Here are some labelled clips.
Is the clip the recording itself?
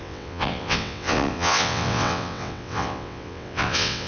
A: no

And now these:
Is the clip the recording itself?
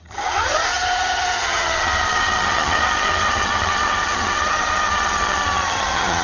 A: no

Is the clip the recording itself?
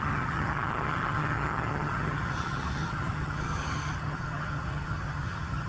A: no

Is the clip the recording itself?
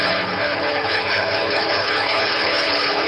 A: no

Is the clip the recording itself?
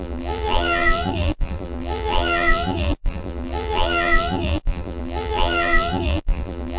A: no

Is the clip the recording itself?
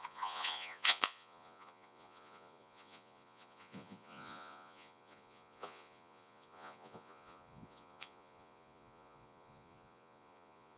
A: no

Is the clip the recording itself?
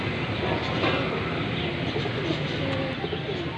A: yes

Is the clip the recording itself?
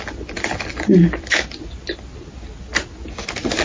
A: yes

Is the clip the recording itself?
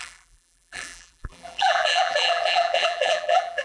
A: no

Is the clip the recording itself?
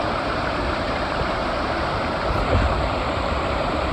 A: no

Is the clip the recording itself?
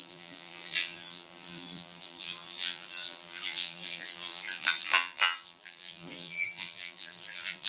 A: no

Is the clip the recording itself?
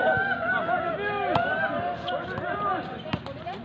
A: yes